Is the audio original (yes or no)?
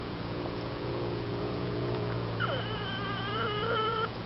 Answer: no